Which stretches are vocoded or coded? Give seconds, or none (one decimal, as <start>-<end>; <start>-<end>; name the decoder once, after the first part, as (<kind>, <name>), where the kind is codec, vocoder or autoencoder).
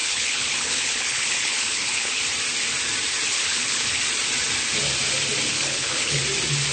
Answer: 0.0-2.2 (codec, HILCodec); 3.3-4.0; 5.5-6.2